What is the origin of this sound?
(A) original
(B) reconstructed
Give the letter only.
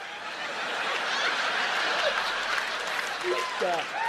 A